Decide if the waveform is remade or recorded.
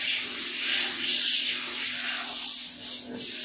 recorded